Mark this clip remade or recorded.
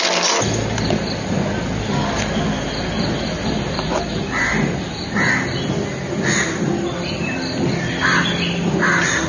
recorded